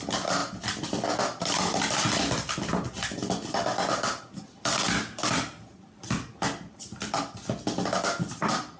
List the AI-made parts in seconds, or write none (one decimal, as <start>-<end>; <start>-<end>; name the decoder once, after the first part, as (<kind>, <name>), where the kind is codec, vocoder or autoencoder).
none